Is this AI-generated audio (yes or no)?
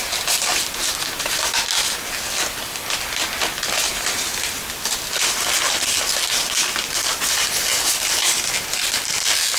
no